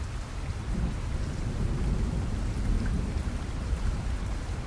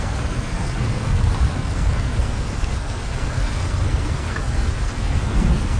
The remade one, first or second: second